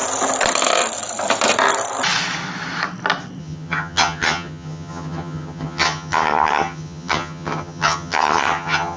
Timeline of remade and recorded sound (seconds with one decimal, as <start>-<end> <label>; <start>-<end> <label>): 0.0-3.4 recorded; 3.4-9.0 remade